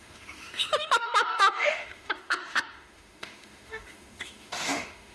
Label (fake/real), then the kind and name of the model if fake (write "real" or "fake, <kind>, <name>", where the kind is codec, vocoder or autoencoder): fake, autoencoder, DAC-VAE